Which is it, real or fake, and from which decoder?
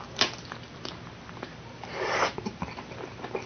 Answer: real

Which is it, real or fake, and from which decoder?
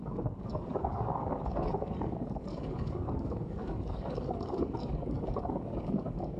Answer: fake, codec, DAC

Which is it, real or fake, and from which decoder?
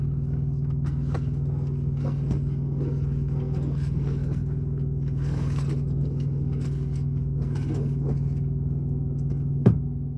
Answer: fake, codec, SNAC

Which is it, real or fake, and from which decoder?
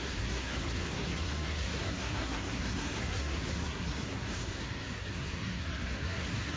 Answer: fake, codec, SNAC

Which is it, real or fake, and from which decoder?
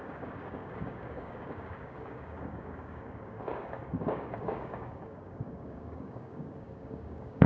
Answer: fake, codec, DAC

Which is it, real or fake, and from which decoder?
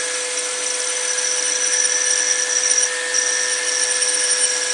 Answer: real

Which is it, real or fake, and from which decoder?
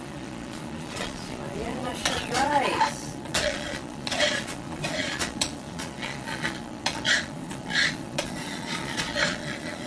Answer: fake, vocoder, Vocos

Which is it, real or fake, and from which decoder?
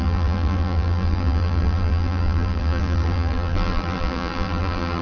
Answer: fake, vocoder, BigVGAN v2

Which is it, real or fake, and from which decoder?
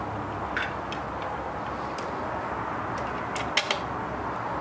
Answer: real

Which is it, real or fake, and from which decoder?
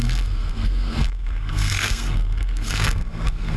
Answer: fake, codec, SNAC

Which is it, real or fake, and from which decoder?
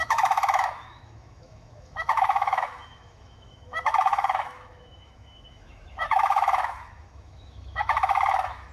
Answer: fake, autoencoder, DAC-VAE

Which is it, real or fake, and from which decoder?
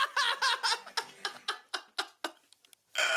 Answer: real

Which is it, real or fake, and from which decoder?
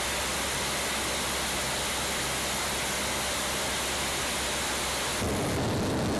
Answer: real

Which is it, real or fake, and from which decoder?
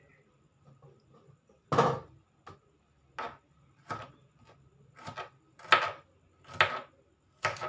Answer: real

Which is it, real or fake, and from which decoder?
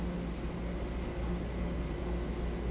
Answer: real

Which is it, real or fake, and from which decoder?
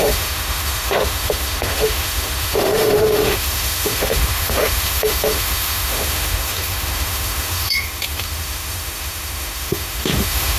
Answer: fake, autoencoder, DAC-VAE